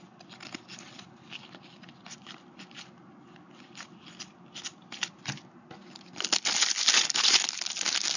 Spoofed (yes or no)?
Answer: no